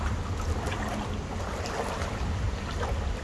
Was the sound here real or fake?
real